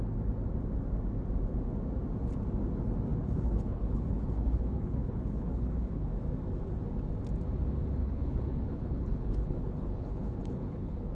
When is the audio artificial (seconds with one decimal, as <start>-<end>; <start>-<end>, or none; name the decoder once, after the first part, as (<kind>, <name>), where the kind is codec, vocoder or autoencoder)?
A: 3.1-6.1 (codec, HILCodec); 8.0-11.1